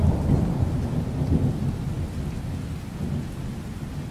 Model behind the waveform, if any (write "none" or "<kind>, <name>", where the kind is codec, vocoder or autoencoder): none